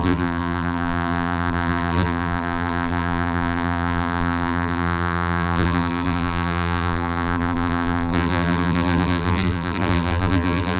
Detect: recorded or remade remade